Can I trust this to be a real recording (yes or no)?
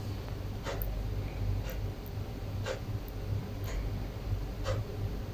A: yes